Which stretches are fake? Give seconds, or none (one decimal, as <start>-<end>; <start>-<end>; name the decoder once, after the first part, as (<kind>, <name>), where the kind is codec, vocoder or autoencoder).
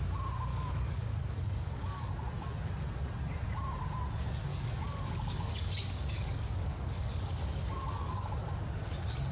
0.5-2.1 (codec, DAC); 4.5-8.3